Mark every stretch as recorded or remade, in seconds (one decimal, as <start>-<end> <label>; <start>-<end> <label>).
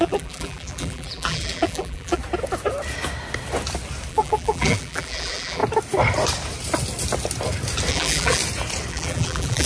0.0-2.2 remade; 2.2-4.1 recorded; 4.1-5.6 remade; 5.6-7.9 recorded; 7.9-8.4 remade; 8.4-8.9 recorded; 8.9-9.7 remade